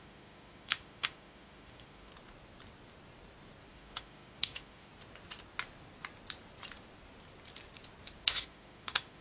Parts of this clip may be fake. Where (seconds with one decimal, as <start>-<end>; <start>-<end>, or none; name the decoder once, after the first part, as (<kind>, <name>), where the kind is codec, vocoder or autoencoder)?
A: 0.0-2.1 (autoencoder, DAC-VAE); 3.7-4.9; 8.2-9.2